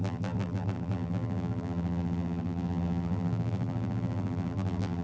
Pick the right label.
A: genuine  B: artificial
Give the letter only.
B